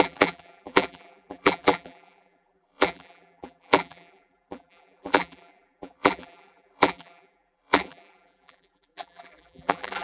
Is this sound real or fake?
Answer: fake